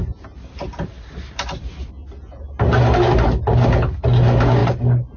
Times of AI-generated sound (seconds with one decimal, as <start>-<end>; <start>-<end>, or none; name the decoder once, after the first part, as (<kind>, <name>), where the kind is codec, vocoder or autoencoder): none